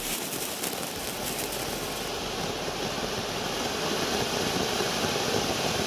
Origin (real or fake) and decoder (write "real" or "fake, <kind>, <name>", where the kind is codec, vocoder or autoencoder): real